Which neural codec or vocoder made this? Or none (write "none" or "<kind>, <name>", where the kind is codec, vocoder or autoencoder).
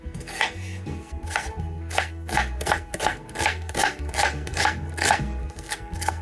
codec, SNAC